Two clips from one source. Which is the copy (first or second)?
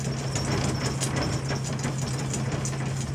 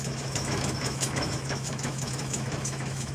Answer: second